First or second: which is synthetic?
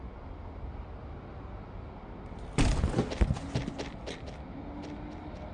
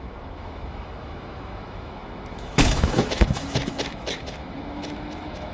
second